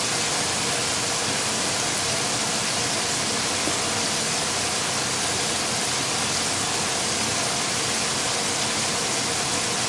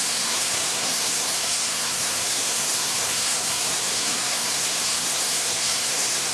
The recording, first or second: first